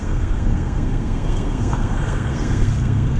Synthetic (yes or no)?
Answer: yes